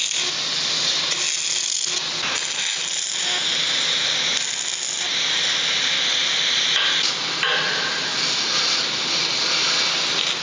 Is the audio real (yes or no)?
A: yes